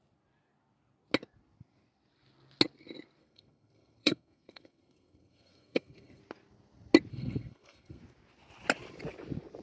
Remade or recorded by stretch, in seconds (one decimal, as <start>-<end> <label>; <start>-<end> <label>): 0.0-3.2 recorded; 3.2-6.2 remade; 6.2-7.1 recorded; 7.1-8.0 remade; 8.0-9.6 recorded